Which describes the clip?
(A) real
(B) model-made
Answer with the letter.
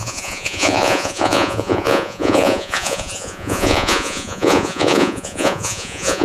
B